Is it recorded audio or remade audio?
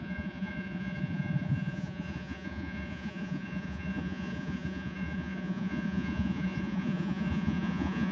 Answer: remade